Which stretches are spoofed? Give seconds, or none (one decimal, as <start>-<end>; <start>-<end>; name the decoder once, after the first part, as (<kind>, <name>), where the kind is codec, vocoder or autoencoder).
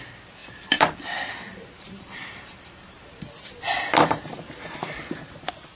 0.4-1.0 (vocoder, BigVGAN v2); 1.5-5.0